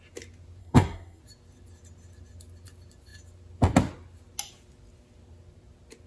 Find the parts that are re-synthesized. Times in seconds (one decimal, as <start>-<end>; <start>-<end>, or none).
0.6-1.2